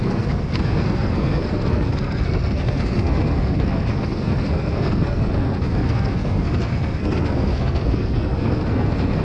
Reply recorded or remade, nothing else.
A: remade